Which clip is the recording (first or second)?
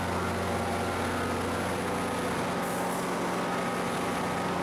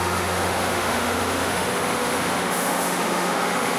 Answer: first